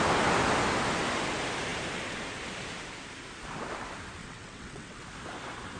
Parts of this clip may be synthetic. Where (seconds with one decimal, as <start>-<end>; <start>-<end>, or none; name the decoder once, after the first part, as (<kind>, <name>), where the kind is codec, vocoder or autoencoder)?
4.2-5.0 (vocoder, WaveNeXt)